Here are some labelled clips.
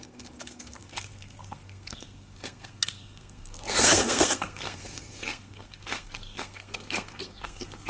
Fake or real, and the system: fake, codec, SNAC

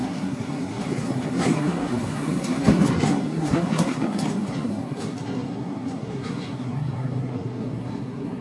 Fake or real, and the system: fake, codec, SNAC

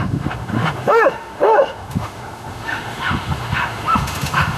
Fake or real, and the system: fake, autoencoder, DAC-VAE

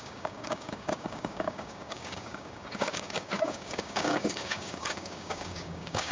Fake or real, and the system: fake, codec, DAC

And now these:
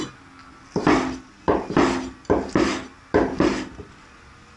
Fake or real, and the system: real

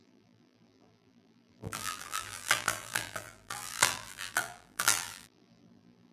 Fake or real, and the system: fake, vocoder, BigVGAN v2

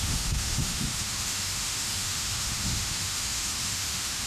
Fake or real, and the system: fake, autoencoder, DAC-VAE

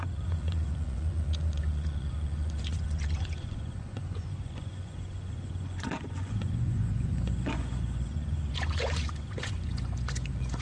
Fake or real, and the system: fake, vocoder, Vocos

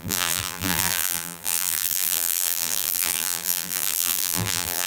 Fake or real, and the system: fake, vocoder, BigVGAN v2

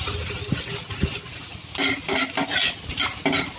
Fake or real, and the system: real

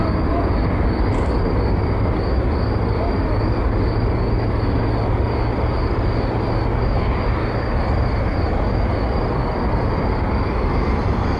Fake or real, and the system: real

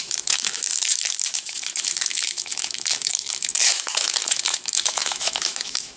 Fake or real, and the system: fake, autoencoder, DAC-VAE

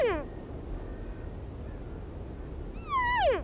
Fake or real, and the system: real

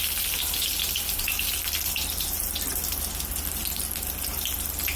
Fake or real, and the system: real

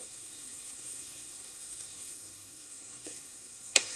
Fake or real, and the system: fake, codec, SNAC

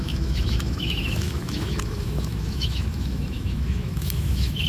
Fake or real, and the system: fake, autoencoder, DAC-VAE